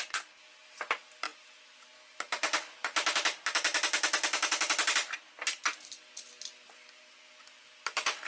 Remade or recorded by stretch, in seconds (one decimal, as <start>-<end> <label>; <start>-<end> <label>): 0.0-8.3 recorded